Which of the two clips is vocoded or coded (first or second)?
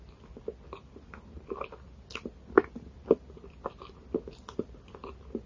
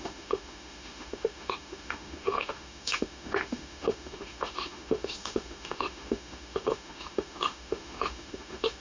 second